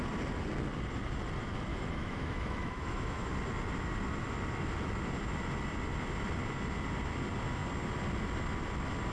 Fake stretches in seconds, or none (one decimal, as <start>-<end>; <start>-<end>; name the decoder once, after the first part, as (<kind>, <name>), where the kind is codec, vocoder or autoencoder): 1.7-3.3 (autoencoder, DAC-VAE)